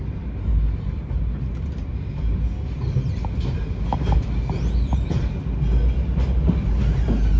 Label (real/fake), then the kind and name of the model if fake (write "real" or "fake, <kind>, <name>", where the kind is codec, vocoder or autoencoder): real